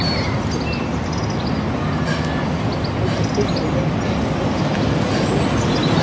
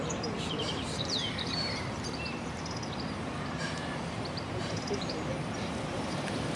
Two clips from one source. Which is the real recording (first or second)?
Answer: first